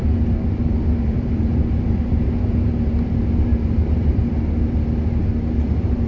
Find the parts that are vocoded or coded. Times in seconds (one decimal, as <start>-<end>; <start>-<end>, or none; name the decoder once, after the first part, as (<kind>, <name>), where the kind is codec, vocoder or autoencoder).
0.6-4.3 (vocoder, BigVGAN v2); 5.2-6.1